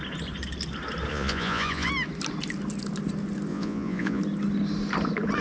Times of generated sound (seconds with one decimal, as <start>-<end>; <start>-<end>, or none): 1.1-1.9; 3.5-4.2

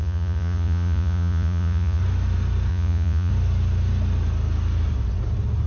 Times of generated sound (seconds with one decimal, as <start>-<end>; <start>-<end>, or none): 0.0-2.0; 2.7-3.3

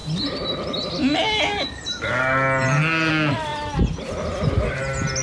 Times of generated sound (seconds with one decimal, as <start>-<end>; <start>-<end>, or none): none